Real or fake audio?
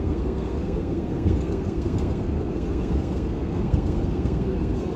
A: fake